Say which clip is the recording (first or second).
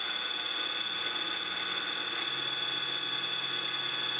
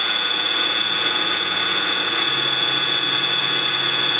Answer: first